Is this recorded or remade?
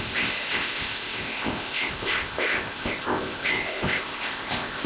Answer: remade